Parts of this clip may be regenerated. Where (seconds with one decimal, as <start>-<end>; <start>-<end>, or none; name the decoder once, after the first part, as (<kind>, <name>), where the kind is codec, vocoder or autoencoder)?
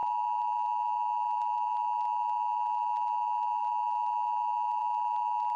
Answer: none